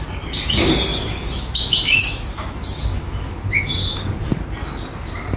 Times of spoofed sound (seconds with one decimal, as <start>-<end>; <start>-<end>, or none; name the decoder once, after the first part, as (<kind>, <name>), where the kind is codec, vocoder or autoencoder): 0.9-4.0 (autoencoder, DAC-VAE)